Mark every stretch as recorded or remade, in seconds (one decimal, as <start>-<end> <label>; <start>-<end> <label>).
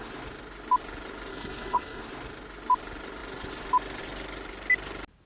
0.0-1.3 recorded; 1.3-2.0 remade; 2.0-5.3 recorded